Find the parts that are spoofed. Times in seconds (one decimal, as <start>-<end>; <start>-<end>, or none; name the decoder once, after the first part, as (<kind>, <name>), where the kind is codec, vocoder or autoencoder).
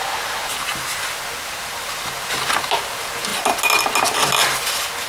none